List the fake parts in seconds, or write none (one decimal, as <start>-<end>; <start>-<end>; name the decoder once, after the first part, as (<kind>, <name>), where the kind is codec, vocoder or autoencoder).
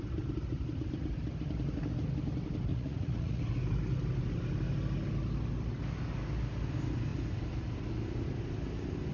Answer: 2.7-3.4 (vocoder, Vocos)